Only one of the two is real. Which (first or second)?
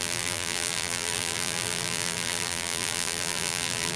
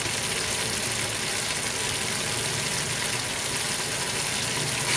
second